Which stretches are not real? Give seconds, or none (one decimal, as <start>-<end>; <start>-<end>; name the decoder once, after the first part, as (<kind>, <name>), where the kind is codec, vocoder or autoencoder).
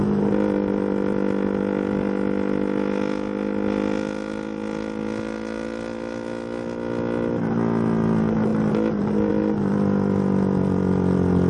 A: none